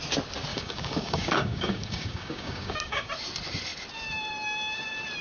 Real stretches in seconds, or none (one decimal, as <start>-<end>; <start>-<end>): 0.0-0.5; 3.1-5.2